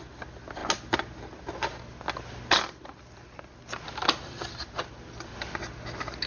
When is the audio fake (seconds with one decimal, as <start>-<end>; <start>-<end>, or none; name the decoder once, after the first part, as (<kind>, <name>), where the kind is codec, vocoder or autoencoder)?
none

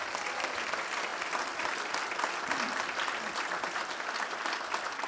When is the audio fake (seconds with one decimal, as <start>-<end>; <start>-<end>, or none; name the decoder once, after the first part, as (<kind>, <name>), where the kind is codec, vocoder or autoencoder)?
none

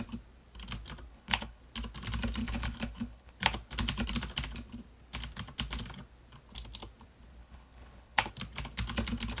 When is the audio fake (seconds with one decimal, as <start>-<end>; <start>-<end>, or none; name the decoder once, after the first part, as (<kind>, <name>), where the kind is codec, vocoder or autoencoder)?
1.1-1.6 (codec, HILCodec); 2.4-3.3; 7.4-8.3

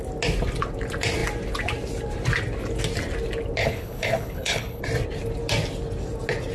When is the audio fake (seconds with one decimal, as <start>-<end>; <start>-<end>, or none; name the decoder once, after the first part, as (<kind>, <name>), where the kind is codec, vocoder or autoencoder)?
3.6-4.8 (codec, HILCodec)

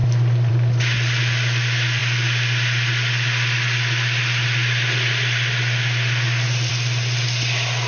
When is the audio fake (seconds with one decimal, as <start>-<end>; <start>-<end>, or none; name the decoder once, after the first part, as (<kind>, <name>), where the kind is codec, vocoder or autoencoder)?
none

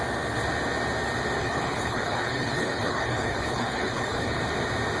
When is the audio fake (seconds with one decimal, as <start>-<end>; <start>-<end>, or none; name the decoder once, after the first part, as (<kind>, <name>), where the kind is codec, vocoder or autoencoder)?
1.4-4.4 (codec, HILCodec)

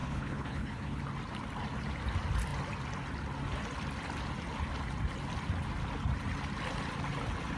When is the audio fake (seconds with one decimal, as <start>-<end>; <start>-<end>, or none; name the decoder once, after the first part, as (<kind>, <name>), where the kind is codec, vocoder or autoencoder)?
0.0-1.0 (codec, HILCodec)